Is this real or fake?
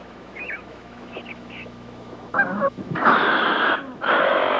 fake